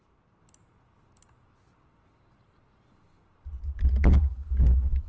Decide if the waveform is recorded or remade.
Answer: recorded